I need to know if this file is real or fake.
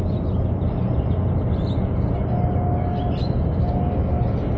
real